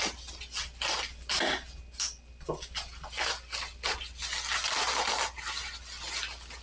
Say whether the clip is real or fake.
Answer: real